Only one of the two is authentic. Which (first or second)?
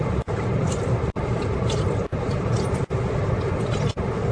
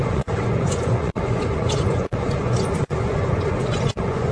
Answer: first